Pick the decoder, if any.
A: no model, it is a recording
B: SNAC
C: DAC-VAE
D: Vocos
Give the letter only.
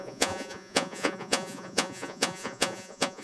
D